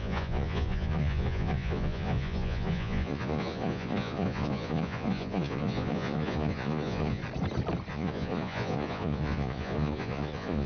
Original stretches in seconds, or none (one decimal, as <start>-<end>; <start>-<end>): 7.2-7.9